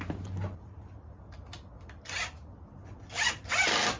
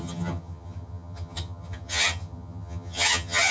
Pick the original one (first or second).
first